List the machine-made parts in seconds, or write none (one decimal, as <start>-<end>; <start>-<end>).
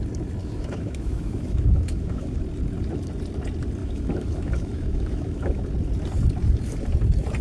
0.4-2.4; 3.8-5.6